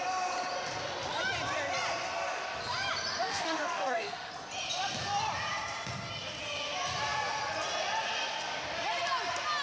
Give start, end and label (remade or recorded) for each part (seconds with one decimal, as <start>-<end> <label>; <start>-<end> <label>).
0.0-3.2 recorded; 3.2-4.3 remade; 4.3-9.6 recorded